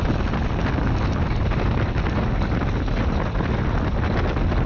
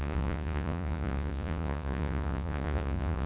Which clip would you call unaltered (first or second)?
first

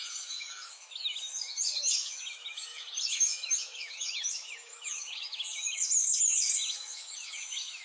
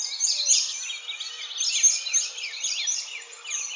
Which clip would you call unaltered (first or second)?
second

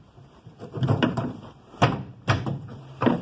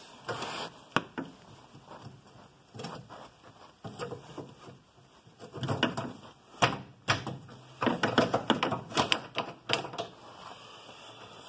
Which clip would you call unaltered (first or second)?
second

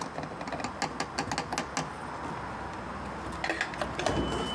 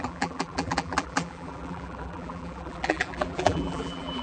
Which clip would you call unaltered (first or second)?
first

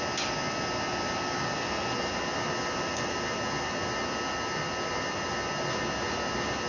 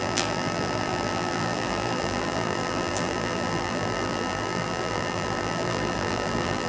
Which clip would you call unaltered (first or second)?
first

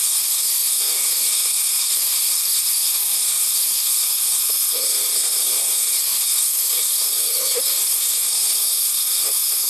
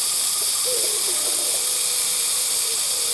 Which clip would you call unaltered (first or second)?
second